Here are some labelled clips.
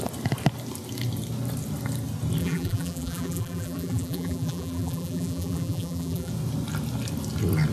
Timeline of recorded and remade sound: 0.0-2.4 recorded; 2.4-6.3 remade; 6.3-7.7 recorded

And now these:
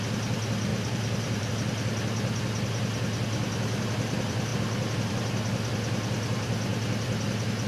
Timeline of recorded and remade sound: 0.0-0.7 recorded; 0.7-1.5 remade; 1.5-7.7 recorded

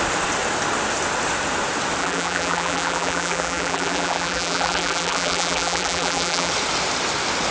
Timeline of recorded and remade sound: 0.0-2.0 recorded; 2.0-6.5 remade; 6.5-7.5 recorded

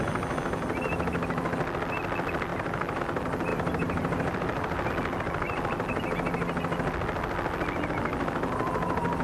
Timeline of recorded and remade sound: 0.0-2.5 recorded; 2.5-3.0 remade; 3.0-3.5 recorded; 3.5-4.9 remade; 4.9-9.2 recorded